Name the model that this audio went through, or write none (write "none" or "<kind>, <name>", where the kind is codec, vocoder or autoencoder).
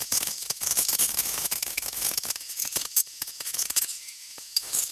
autoencoder, DAC-VAE